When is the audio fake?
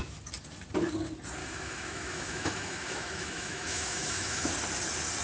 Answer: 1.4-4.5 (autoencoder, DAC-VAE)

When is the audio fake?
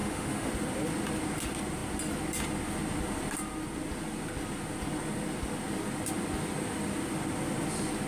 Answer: 0.0-0.5 (autoencoder, DAC-VAE)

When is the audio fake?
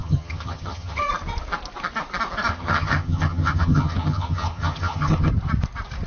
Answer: 0.0-1.0 (vocoder, HiFi-GAN); 2.5-5.3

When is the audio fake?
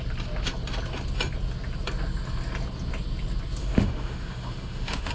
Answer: 3.6-5.1 (autoencoder, DAC-VAE)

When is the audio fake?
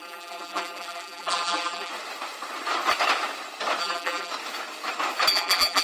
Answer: 0.0-1.9 (vocoder, BigVGAN v2); 3.8-4.3; 5.3-5.8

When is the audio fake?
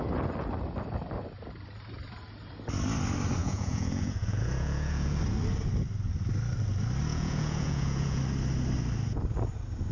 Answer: 3.4-5.2 (vocoder, Vocos); 7.1-8.2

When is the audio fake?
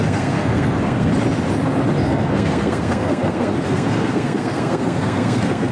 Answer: 0.0-1.1 (codec, SNAC); 2.0-5.7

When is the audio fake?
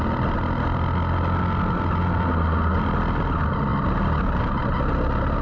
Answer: none